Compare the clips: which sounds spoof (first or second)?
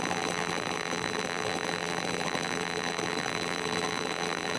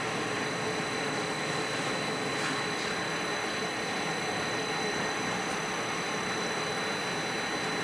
first